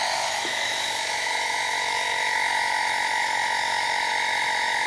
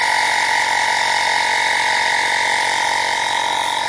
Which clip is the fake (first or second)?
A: first